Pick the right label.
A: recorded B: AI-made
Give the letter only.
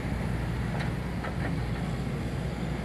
A